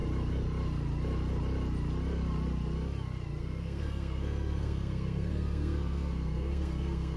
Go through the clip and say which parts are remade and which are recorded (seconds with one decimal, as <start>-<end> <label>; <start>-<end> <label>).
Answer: 0.0-3.4 recorded; 3.4-7.2 remade